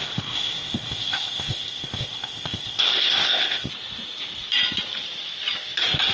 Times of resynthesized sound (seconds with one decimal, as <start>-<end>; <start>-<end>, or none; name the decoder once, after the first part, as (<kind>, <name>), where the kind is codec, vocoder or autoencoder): 0.0-3.7 (codec, ZipCodec)